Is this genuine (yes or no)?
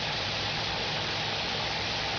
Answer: no